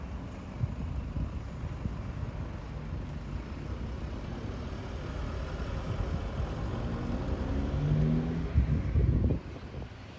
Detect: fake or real real